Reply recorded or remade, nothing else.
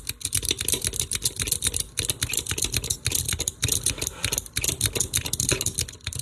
recorded